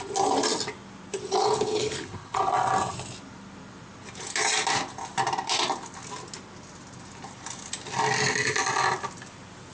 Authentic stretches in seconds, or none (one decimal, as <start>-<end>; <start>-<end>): 0.0-1.4; 2.4-9.7